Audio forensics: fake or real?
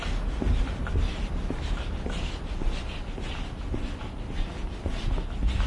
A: real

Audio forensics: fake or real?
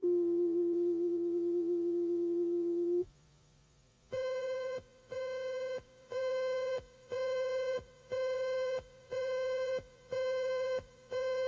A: fake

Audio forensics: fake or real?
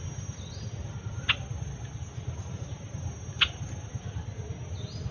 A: real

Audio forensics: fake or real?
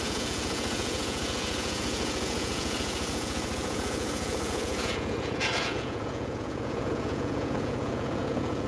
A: fake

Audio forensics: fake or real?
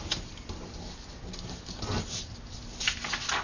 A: real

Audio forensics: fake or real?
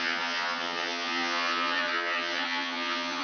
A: fake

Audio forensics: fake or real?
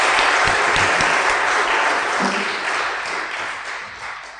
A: real